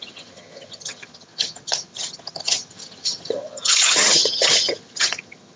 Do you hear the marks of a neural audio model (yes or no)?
yes